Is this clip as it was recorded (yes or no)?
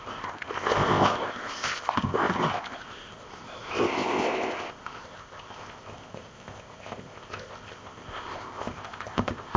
no